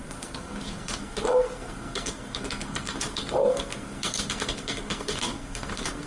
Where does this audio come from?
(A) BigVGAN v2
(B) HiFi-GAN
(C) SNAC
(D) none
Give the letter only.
C